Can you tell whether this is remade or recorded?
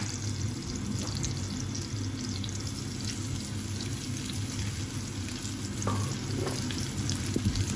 recorded